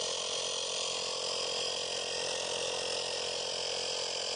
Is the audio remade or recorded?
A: recorded